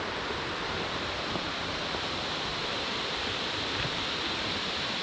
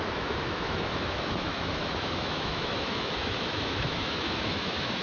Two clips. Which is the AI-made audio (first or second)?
second